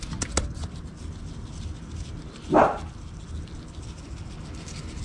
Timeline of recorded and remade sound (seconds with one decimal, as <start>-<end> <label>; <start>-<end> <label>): 0.0-5.0 recorded